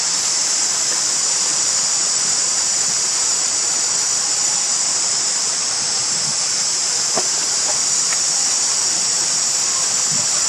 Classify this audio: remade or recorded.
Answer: remade